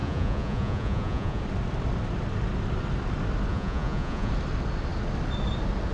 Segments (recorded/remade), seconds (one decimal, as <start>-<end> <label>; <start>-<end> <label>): 0.0-1.4 remade; 1.4-3.5 recorded; 3.5-4.3 remade; 4.3-5.9 recorded